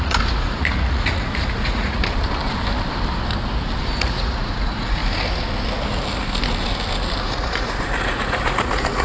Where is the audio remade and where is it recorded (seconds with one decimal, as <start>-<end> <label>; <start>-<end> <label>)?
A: 0.0-2.0 remade; 2.0-4.0 recorded; 4.0-5.0 remade; 5.0-7.2 recorded; 7.2-9.0 remade